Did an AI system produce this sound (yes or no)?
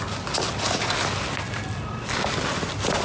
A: no